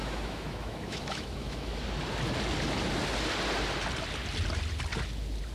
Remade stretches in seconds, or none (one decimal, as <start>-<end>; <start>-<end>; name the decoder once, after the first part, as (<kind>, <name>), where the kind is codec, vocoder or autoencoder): 0.0-1.8 (autoencoder, DAC-VAE)